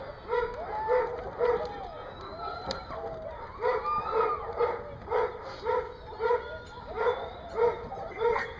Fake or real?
real